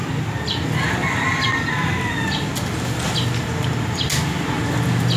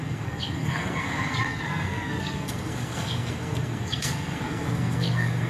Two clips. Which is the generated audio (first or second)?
second